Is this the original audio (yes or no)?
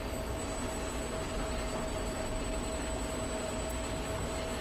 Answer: yes